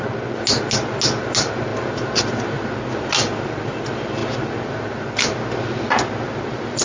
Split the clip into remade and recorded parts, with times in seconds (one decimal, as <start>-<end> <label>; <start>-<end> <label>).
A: 0.0-6.8 recorded